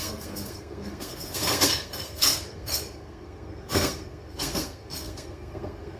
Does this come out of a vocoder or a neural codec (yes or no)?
yes